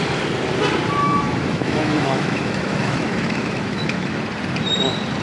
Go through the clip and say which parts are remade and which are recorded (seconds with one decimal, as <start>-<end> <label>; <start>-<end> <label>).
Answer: 0.0-1.0 recorded; 1.0-4.1 remade; 4.1-5.2 recorded